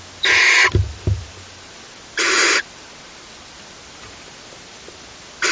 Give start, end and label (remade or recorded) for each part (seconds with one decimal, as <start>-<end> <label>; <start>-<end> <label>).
0.0-5.5 recorded